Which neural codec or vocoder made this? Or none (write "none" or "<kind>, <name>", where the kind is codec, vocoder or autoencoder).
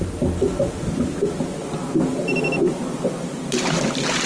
none